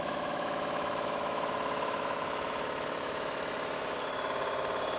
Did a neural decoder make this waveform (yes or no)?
yes